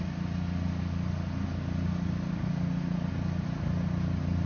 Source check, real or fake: real